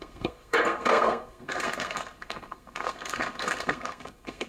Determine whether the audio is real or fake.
fake